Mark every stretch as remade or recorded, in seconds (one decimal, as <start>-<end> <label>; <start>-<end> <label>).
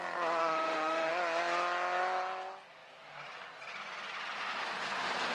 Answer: 0.0-0.4 recorded; 0.4-1.1 remade; 1.1-5.3 recorded